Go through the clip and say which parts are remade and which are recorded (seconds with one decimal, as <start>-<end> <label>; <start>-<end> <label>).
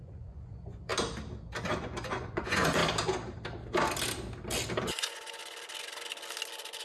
0.0-0.9 remade; 0.9-1.8 recorded; 1.8-2.8 remade; 2.8-4.8 recorded; 4.8-5.4 remade; 5.4-6.8 recorded